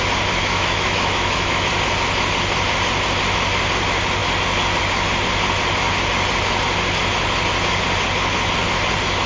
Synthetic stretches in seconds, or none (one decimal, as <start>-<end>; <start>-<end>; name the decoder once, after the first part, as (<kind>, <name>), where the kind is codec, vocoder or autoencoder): 0.4-1.7 (autoencoder, DAC-VAE)